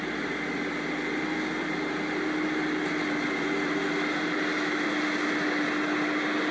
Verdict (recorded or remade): recorded